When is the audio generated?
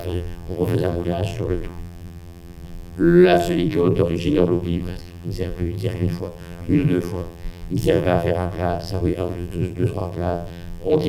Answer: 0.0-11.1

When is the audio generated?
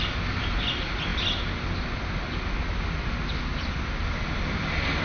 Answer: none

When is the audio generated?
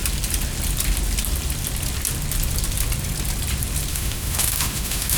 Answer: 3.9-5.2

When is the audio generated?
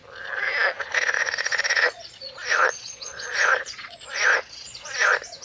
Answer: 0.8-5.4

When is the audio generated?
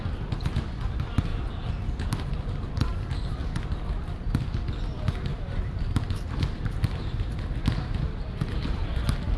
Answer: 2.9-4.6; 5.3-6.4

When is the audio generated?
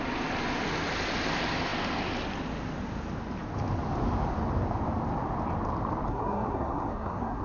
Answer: 6.1-7.4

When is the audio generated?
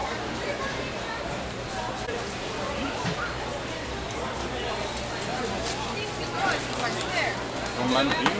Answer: 0.0-4.6